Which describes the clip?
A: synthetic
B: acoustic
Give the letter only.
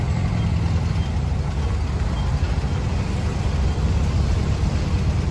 B